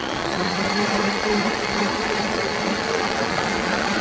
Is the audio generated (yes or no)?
yes